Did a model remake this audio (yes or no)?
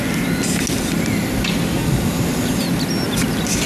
no